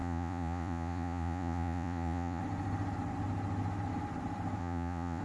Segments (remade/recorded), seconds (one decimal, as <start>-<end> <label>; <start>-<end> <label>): 0.0-2.4 remade; 2.4-4.6 recorded; 4.6-5.2 remade